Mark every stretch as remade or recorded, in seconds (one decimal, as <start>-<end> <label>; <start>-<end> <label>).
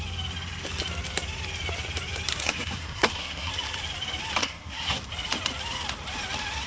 0.0-2.4 recorded; 2.4-3.5 remade; 3.5-4.4 recorded; 4.4-5.0 remade; 5.0-6.7 recorded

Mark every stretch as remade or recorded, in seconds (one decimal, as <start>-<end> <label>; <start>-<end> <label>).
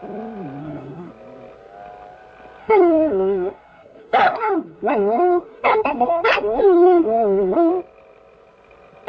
0.0-0.6 recorded; 0.6-1.1 remade; 1.1-2.6 recorded; 2.6-7.7 remade; 7.7-9.1 recorded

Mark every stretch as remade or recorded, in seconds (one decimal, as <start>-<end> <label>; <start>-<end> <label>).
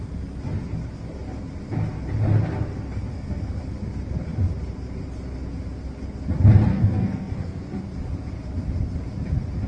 0.0-3.1 recorded; 3.1-3.6 remade; 3.6-6.7 recorded; 6.7-7.8 remade; 7.8-9.7 recorded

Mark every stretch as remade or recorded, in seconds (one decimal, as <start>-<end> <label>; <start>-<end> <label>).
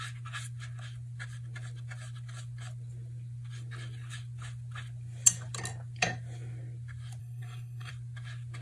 0.0-7.2 recorded; 7.2-7.9 remade; 7.9-8.6 recorded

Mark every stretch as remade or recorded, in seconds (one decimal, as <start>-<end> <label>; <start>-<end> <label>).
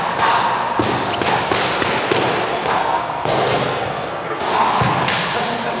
0.0-2.8 recorded; 2.8-4.4 remade; 4.4-5.8 recorded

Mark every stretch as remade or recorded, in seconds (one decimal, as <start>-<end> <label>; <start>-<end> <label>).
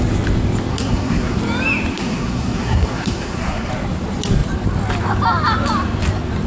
0.0-0.7 recorded; 0.7-1.4 remade; 1.4-1.9 recorded; 1.9-3.7 remade; 3.7-6.5 recorded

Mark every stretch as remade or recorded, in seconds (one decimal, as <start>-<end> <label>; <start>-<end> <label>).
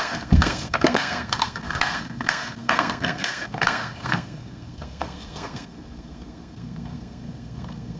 0.0-8.0 remade